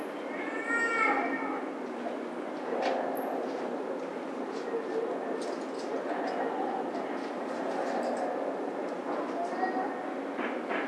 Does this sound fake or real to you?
real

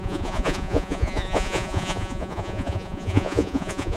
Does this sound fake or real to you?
fake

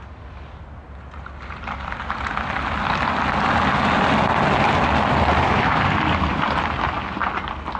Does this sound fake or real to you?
real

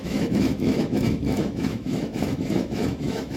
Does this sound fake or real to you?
fake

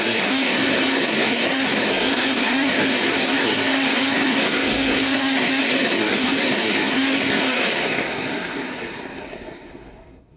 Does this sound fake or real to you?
fake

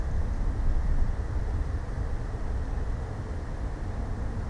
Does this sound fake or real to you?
real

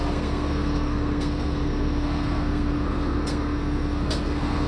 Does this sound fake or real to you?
fake